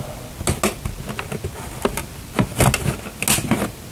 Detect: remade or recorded recorded